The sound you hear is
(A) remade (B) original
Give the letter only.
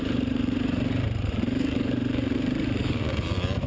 A